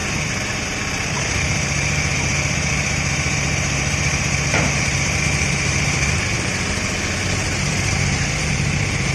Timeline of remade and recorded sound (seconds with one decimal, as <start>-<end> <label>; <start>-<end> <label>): 0.0-1.1 recorded; 1.1-9.1 remade